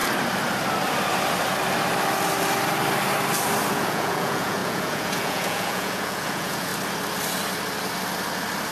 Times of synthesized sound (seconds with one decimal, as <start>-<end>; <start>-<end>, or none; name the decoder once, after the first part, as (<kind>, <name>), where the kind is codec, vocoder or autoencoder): 3.7-6.7 (vocoder, Vocos)